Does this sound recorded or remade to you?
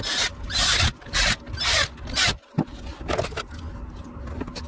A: recorded